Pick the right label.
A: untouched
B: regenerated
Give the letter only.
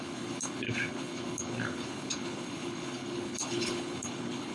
B